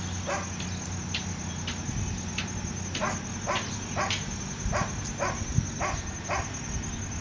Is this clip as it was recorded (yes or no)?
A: yes